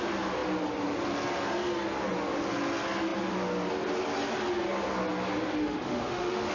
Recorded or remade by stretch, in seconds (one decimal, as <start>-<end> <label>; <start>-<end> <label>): 0.0-5.6 recorded; 5.6-6.5 remade